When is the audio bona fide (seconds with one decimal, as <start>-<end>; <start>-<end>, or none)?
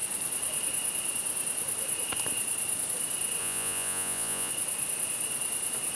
0.0-3.4; 4.5-5.9